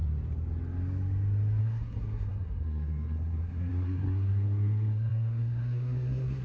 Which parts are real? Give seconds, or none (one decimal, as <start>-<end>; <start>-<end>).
0.0-1.6